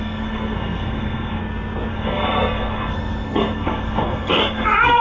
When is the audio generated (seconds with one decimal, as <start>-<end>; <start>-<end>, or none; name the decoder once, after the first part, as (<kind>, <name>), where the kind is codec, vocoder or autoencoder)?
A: 0.0-1.4 (codec, SNAC); 1.9-5.0

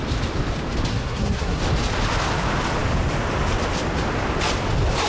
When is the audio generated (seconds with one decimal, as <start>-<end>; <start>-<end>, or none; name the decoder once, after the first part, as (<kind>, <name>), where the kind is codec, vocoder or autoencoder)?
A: 0.9-1.6 (codec, SNAC)

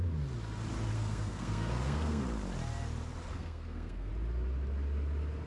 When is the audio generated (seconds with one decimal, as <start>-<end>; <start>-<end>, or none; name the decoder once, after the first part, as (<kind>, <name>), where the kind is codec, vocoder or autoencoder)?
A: 0.9-2.2 (codec, SNAC); 3.3-4.1

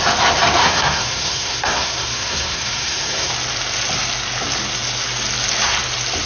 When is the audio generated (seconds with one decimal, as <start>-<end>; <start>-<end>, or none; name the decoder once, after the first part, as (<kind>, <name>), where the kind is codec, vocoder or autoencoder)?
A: 0.6-3.3 (codec, SNAC)

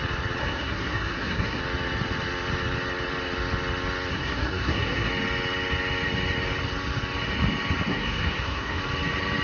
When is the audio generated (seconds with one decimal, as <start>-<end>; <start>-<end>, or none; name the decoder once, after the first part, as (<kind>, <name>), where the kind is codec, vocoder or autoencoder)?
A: 0.4-1.6 (codec, SNAC); 4.1-5.1; 7.9-8.8

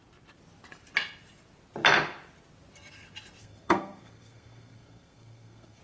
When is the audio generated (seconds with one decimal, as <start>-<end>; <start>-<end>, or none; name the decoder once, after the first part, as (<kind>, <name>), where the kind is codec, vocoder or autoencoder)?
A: 3.4-5.8 (codec, SNAC)

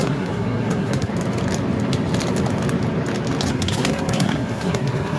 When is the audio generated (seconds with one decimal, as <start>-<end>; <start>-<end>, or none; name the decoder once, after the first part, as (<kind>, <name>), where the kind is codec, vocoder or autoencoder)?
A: 0.0-1.1 (codec, SNAC); 3.5-5.2